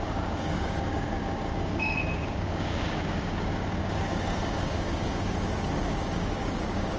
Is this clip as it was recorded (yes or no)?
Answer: no